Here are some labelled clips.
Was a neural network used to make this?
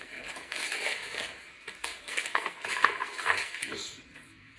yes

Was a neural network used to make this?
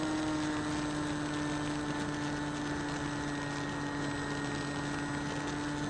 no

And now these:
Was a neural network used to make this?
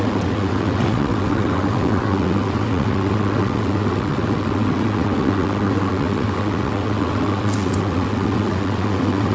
yes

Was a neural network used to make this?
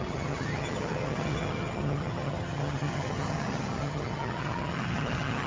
yes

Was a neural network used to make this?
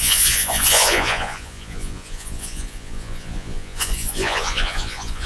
yes